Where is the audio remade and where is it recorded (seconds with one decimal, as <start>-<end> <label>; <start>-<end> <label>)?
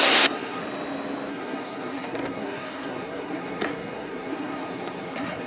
0.0-0.6 remade; 0.6-1.3 recorded; 1.3-5.5 remade